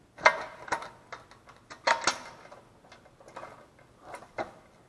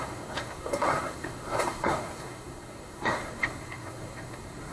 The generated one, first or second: second